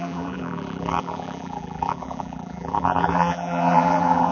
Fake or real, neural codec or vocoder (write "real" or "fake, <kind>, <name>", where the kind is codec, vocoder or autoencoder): fake, vocoder, BigVGAN v2